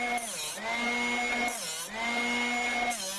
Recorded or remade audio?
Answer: recorded